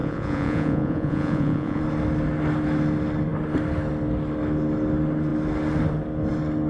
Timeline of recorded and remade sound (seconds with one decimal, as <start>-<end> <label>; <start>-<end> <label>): 0.0-1.8 remade; 1.8-6.7 recorded

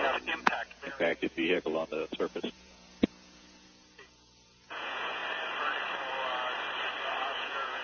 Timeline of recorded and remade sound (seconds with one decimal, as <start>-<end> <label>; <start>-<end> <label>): 0.0-5.2 remade; 5.2-7.2 recorded; 7.2-7.8 remade

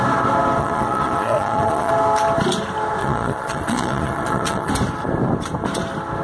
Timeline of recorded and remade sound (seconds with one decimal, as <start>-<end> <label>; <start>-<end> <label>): 0.0-0.6 recorded; 0.6-1.9 remade; 1.9-3.0 recorded; 3.0-4.7 remade; 4.7-6.2 recorded

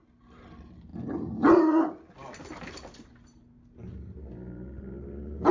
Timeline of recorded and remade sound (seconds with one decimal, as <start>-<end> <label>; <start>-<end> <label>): 0.0-5.5 recorded

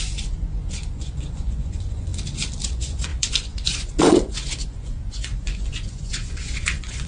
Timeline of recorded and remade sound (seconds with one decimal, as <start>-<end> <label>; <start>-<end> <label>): 0.0-2.1 remade; 2.1-2.7 recorded; 2.7-7.1 remade

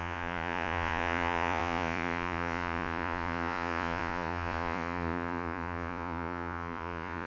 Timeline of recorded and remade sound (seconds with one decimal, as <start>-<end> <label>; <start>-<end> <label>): 0.0-7.3 remade

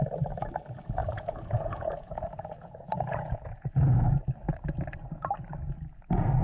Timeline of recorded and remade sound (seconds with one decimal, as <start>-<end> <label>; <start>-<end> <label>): 0.0-1.0 recorded; 1.0-4.1 remade; 4.1-6.4 recorded

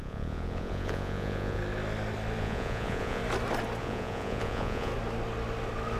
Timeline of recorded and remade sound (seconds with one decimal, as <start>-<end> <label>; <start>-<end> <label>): 0.0-1.6 remade; 1.6-2.4 recorded; 2.4-3.2 remade; 3.2-3.8 recorded; 3.8-4.9 remade; 4.9-6.0 recorded